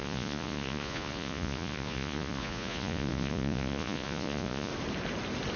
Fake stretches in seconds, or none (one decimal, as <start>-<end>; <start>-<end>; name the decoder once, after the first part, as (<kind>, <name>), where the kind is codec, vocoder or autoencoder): 0.0-4.7 (vocoder, Vocos)